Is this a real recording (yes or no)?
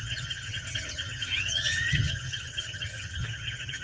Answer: no